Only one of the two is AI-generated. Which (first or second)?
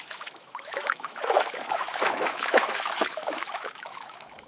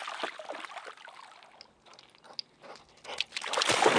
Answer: first